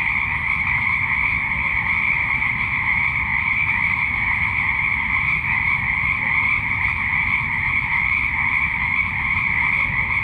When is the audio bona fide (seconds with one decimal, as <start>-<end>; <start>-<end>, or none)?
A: 0.0-3.3; 5.8-6.5; 9.6-10.2